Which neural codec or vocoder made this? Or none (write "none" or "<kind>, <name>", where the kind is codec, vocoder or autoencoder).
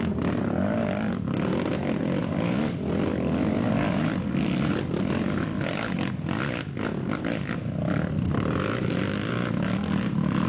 none